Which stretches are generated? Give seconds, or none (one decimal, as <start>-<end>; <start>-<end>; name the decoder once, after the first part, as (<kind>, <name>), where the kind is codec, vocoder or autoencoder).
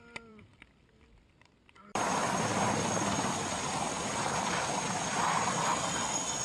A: 0.0-6.4 (vocoder, BigVGAN v2)